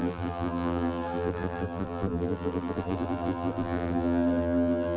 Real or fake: fake